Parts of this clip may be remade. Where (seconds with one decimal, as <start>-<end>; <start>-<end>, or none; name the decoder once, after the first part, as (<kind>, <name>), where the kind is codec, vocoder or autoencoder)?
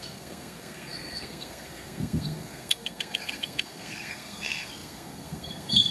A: 0.0-5.9 (codec, SNAC)